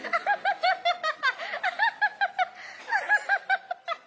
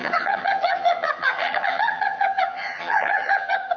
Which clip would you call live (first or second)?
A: first